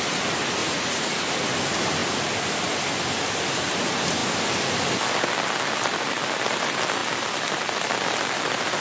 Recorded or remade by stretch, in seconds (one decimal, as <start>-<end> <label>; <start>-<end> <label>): 0.0-0.6 recorded; 0.6-1.2 remade; 1.2-8.8 recorded